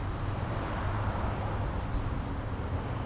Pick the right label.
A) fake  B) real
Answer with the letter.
B